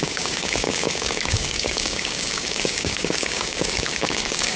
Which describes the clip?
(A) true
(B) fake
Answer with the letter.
B